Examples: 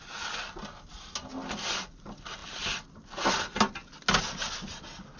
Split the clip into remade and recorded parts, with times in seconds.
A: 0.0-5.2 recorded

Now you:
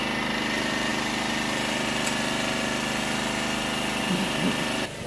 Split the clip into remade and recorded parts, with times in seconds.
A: 0.0-5.1 recorded

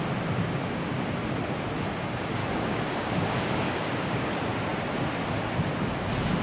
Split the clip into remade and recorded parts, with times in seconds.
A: 0.0-2.4 recorded; 2.4-4.3 remade; 4.3-6.4 recorded

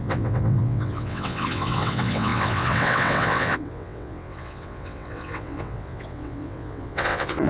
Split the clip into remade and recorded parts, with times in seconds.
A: 0.0-7.5 remade

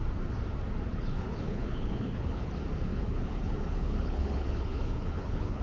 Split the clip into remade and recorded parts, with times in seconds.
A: 0.0-0.9 recorded; 0.9-2.5 remade; 2.5-2.9 recorded; 2.9-5.6 remade